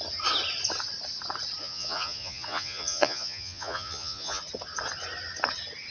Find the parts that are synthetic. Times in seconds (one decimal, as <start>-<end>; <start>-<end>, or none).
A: 1.6-4.4